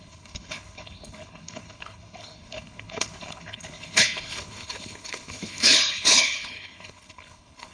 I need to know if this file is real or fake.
fake